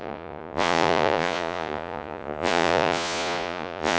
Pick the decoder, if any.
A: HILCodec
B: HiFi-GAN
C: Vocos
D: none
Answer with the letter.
C